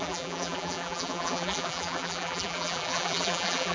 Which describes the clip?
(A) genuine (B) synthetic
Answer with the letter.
B